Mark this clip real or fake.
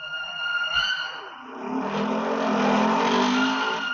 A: real